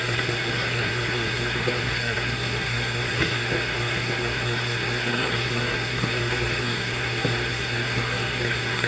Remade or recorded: remade